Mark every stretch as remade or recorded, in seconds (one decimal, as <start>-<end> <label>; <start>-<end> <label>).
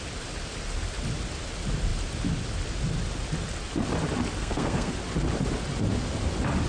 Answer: 0.0-4.4 recorded; 4.4-4.9 remade; 4.9-6.7 recorded